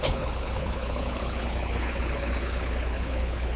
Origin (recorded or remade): remade